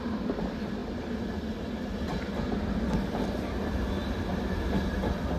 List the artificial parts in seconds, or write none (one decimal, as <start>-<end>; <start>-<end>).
none